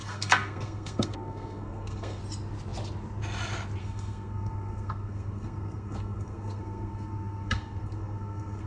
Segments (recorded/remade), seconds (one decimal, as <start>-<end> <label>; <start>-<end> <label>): 0.0-2.2 remade; 2.2-3.8 recorded; 3.8-8.7 remade